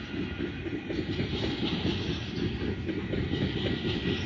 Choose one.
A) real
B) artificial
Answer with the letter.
A